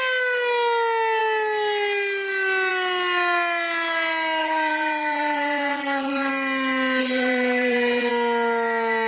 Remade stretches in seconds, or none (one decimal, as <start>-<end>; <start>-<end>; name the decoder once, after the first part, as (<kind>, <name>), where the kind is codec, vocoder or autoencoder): 4.4-6.3 (vocoder, BigVGAN v2); 7.0-8.1